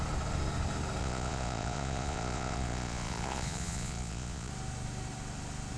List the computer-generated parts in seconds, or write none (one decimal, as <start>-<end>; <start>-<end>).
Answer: 1.0-4.5